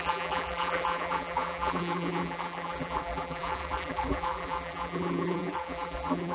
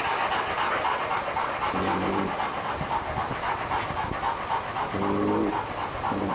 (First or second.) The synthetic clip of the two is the first